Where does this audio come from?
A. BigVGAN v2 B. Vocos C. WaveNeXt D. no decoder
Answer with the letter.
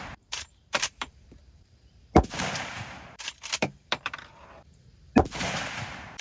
A